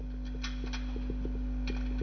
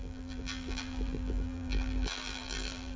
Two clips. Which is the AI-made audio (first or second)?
second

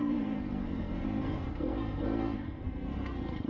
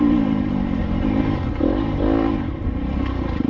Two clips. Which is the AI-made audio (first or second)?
first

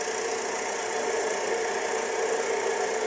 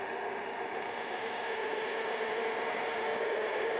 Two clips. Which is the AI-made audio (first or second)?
second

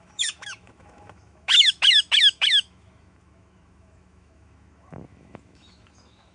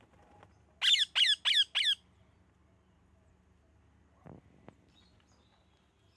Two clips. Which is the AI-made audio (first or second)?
first